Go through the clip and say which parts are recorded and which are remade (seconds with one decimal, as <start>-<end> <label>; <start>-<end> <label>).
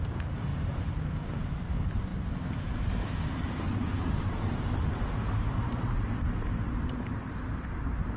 0.0-0.5 recorded; 0.5-1.5 remade; 1.5-2.1 recorded; 2.1-5.7 remade; 5.7-8.2 recorded